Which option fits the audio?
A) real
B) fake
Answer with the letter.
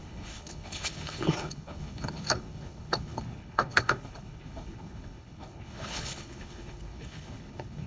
B